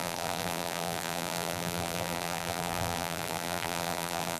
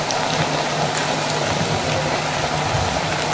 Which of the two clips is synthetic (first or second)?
first